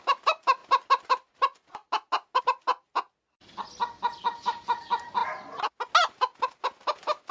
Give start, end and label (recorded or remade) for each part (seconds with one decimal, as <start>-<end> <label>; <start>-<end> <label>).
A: 0.0-7.3 recorded